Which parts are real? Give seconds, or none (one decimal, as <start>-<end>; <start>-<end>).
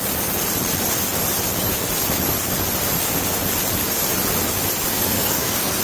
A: 0.0-4.9